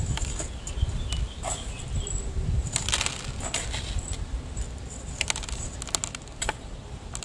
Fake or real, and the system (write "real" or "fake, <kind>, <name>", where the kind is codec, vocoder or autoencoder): real